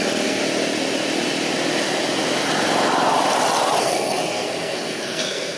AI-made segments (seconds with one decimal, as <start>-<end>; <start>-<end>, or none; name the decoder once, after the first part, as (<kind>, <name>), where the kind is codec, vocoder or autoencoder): 0.0-0.4 (codec, SNAC); 3.8-5.6